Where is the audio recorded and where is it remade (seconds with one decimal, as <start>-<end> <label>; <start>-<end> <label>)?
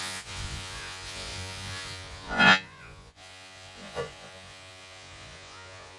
0.0-6.0 remade